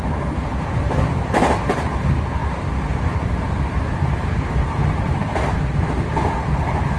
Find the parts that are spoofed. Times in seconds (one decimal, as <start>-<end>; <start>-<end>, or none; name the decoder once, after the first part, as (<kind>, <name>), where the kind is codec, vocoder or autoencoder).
0.0-2.4 (vocoder, BigVGAN v2); 3.3-7.0